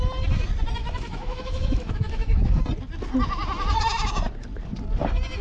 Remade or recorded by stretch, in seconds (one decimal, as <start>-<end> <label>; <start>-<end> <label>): 0.0-0.8 recorded; 0.8-2.6 remade; 2.6-5.4 recorded